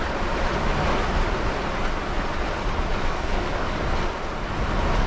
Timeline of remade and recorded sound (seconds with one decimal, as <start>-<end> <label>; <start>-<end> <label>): 0.0-2.9 recorded; 2.9-3.8 remade; 3.8-5.1 recorded